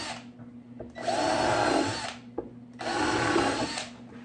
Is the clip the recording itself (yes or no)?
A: yes